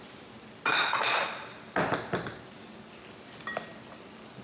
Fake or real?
real